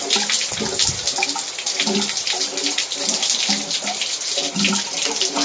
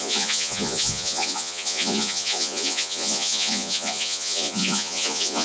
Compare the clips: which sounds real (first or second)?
first